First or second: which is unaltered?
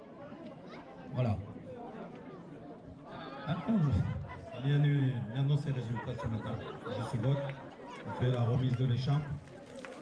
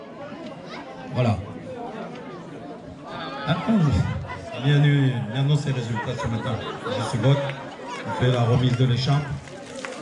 second